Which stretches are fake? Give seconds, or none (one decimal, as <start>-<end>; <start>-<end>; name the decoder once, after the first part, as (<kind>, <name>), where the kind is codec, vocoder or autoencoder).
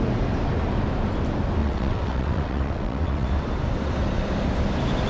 1.6-3.3 (vocoder, WaveNeXt)